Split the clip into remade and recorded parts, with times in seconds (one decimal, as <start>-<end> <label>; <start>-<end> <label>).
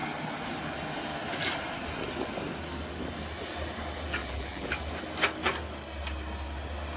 0.0-4.2 recorded; 4.2-4.7 remade; 4.7-7.0 recorded